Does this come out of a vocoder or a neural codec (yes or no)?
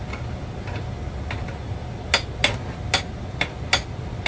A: no